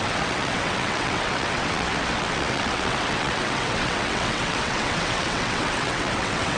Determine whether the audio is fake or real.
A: fake